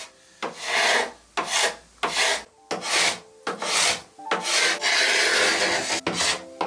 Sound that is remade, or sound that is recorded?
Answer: recorded